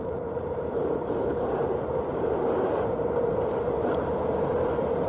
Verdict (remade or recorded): remade